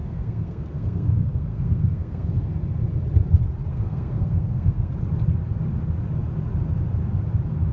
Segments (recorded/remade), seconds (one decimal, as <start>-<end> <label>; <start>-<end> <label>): 0.0-2.5 remade; 2.5-3.7 recorded; 3.7-4.9 remade; 4.9-7.7 recorded